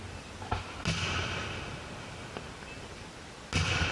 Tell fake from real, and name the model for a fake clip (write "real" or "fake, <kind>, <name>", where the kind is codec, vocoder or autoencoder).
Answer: real